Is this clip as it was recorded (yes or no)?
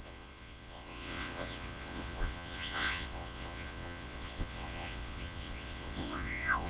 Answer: no